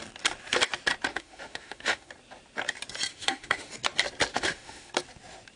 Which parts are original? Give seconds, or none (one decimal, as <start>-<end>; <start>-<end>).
0.0-1.1; 2.1-3.1; 3.7-4.3; 4.9-5.6